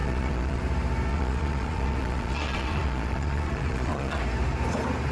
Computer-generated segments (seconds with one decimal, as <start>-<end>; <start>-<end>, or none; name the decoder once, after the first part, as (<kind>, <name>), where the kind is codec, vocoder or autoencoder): 0.0-0.6 (vocoder, Vocos); 1.1-4.2